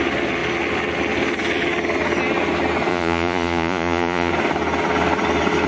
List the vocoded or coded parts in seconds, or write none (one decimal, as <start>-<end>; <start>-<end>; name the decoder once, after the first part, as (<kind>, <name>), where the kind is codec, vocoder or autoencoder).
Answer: 2.9-4.3 (vocoder, Vocos)